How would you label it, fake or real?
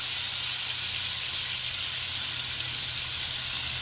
real